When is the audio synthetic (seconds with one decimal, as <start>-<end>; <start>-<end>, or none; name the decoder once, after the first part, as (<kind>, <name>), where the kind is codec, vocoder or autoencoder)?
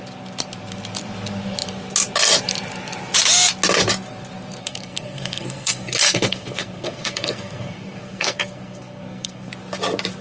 4.6-9.5 (codec, SNAC)